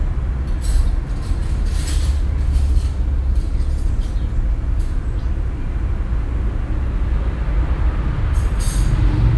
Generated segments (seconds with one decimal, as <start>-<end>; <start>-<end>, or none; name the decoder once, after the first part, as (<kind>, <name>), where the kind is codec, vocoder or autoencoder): none